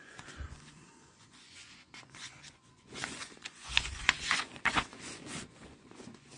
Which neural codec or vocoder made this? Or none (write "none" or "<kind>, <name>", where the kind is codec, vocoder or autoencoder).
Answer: vocoder, Vocos